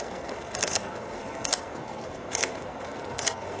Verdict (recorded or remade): remade